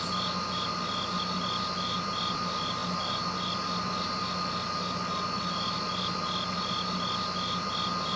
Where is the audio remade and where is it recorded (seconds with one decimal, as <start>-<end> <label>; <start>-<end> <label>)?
0.0-8.2 recorded